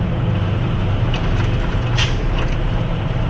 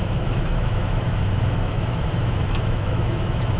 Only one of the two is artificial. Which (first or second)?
second